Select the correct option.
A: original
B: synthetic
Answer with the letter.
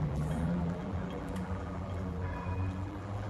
B